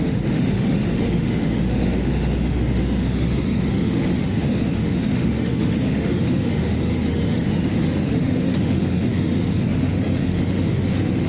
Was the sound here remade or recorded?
remade